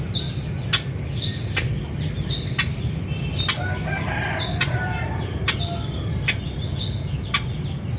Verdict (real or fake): real